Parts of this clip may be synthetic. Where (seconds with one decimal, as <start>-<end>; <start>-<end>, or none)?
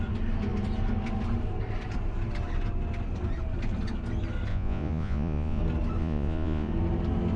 4.5-5.6; 6.0-6.7